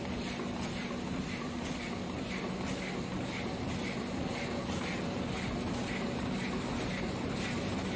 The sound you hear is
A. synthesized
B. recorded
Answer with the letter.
B